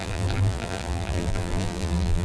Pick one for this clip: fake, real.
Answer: fake